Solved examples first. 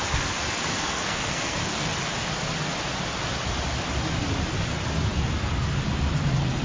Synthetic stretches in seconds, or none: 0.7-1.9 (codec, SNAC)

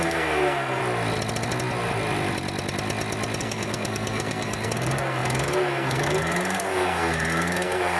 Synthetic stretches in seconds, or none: 0.0-0.8 (codec, SNAC); 3.4-8.0

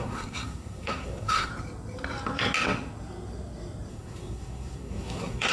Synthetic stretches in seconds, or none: 0.0-1.5 (codec, SNAC); 3.9-5.5

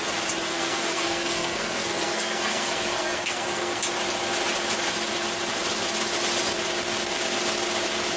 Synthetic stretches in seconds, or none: 0.5-3.8 (codec, SNAC)

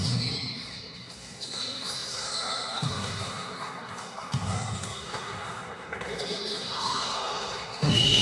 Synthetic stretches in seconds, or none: 0.0-8.2 (codec, SNAC)

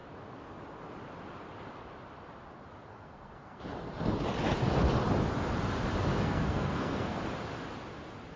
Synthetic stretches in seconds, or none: 2.9-3.6 (codec, SNAC); 6.1-7.2

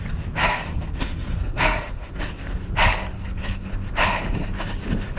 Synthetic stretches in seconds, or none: 0.4-2.1 (codec, SNAC); 3.2-3.9